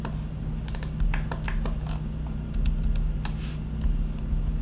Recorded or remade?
recorded